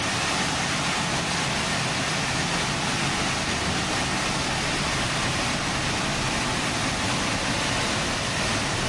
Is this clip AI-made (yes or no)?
no